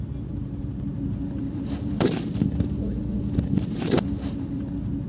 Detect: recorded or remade remade